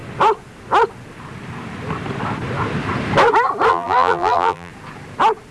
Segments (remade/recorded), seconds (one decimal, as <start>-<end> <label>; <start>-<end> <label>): 0.0-3.7 recorded; 3.7-4.7 remade; 4.7-5.5 recorded